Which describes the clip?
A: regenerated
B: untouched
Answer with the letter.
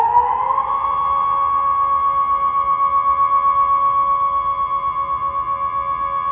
B